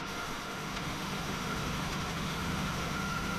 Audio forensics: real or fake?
fake